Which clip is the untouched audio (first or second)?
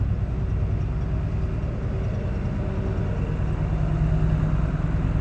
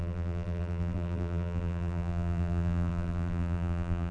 first